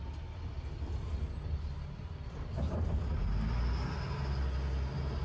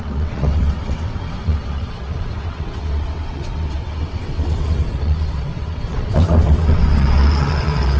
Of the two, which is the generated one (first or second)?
second